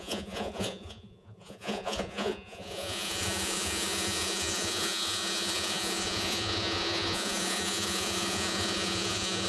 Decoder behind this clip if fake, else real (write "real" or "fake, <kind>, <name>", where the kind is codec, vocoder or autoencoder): fake, vocoder, Vocos